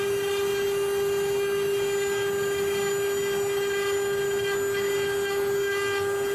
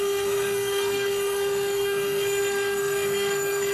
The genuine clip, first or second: first